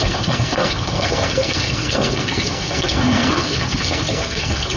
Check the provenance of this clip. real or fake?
fake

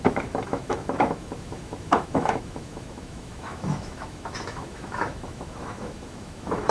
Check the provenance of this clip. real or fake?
fake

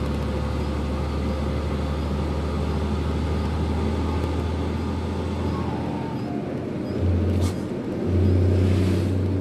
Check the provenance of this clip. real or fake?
real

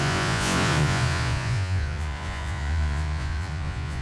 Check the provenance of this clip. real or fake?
fake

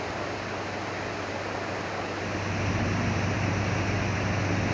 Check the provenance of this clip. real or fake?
real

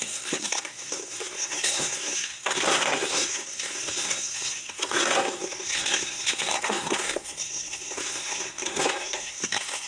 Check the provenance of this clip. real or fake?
fake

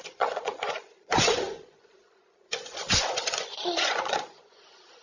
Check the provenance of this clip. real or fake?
fake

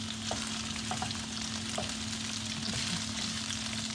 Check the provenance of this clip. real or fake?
real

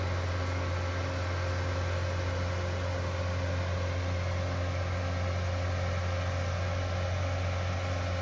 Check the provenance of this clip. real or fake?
real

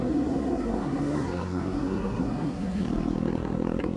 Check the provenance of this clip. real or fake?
fake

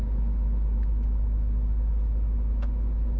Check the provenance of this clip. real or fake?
real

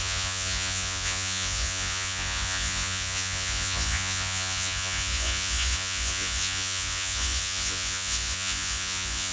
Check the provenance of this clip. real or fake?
fake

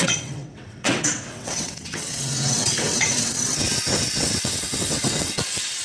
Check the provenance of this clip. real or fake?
fake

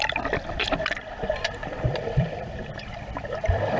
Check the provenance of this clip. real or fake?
fake